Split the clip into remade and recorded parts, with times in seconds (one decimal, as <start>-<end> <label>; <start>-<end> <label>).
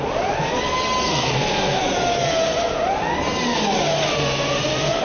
0.0-1.1 recorded; 1.1-1.8 remade; 1.8-5.0 recorded